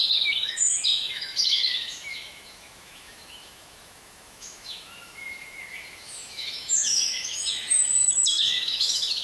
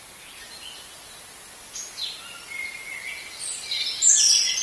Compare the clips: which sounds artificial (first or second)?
first